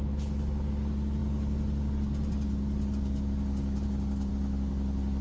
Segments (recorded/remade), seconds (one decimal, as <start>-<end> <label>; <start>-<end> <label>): 0.0-5.2 recorded